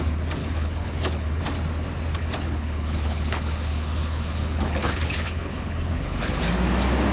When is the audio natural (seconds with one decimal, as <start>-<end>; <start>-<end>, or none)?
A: 0.0-0.4; 1.4-2.1; 6.4-7.1

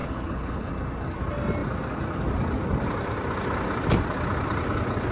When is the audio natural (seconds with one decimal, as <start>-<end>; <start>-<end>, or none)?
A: 0.7-5.1

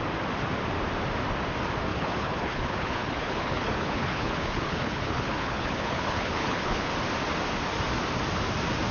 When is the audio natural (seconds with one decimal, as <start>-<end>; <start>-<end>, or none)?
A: 0.0-1.9; 6.9-8.9

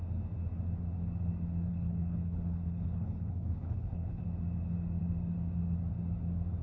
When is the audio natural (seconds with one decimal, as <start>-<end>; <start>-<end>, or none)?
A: 0.0-1.7; 4.2-6.6

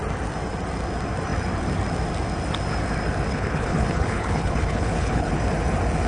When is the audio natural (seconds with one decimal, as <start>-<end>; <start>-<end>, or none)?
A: 0.0-3.3; 5.3-6.1

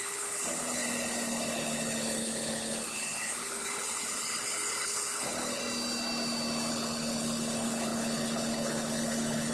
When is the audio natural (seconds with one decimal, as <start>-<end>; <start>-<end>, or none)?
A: 5.6-6.7

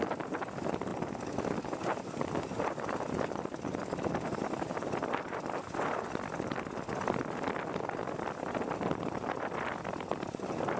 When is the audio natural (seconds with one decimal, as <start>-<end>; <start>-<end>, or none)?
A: 0.0-10.8

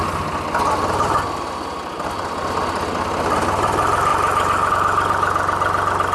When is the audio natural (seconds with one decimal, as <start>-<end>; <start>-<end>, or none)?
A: 0.0-6.1